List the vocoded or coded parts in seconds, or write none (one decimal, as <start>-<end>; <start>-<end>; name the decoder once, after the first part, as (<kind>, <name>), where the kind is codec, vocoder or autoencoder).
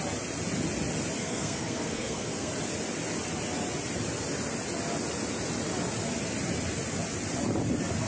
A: 1.2-2.5 (codec, SNAC)